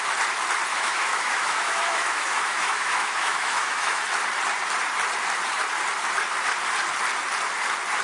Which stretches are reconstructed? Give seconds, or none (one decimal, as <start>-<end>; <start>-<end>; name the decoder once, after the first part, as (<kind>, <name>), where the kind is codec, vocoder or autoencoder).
0.7-4.0 (autoencoder, DAC-VAE)

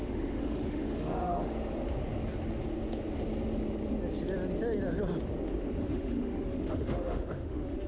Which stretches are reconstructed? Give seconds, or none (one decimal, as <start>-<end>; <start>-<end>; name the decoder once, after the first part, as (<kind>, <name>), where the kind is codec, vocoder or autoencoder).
0.0-1.5 (autoencoder, DAC-VAE); 5.8-7.9

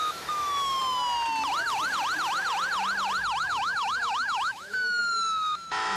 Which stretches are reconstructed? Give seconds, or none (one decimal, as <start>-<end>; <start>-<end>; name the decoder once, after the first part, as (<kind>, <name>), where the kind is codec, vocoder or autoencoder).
0.0-0.8 (autoencoder, DAC-VAE); 3.4-6.0

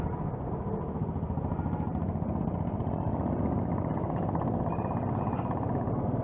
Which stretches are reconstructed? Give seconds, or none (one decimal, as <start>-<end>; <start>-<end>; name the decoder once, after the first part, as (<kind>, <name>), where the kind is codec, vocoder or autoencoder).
none

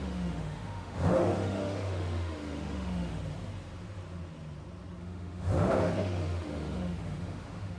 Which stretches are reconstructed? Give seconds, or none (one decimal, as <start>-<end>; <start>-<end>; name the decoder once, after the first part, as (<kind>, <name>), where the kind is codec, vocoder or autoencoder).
0.0-3.2 (autoencoder, DAC-VAE); 5.0-7.8